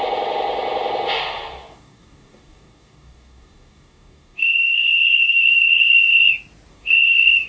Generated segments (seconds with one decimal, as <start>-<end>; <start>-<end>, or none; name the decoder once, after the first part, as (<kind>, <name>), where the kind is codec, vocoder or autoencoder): 1.7-6.2 (codec, DAC); 6.7-7.5